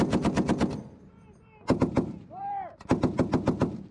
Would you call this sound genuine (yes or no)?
yes